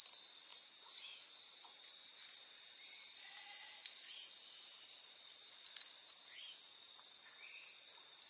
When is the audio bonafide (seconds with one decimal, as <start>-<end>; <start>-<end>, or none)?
0.0-0.5; 1.9-8.3